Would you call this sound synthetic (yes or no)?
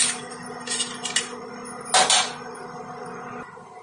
no